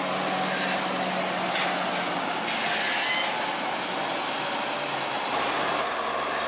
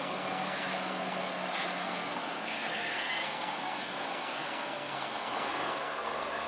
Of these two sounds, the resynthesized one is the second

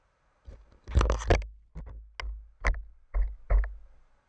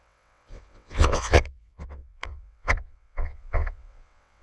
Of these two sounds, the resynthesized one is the second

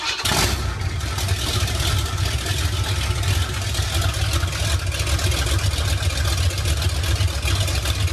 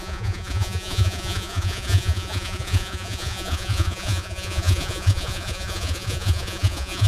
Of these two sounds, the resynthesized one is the second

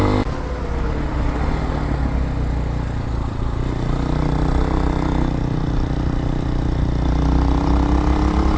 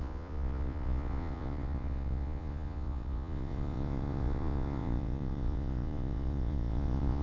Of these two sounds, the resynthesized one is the second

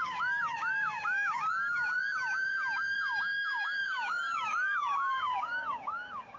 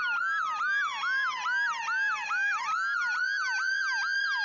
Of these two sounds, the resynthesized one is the first